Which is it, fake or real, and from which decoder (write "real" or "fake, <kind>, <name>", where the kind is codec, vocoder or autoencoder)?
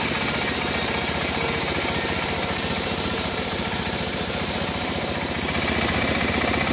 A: real